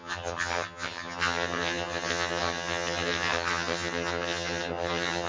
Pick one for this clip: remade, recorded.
remade